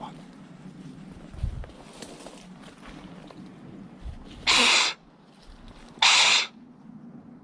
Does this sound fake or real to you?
real